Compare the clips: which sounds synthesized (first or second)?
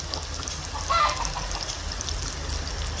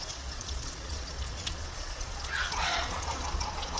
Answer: second